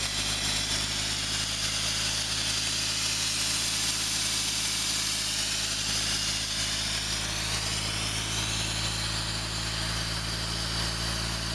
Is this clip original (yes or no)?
yes